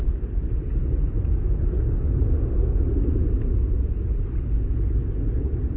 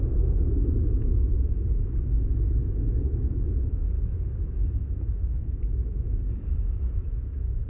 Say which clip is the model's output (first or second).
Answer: second